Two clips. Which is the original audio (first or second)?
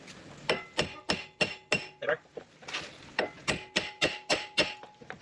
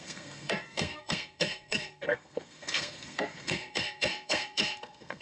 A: first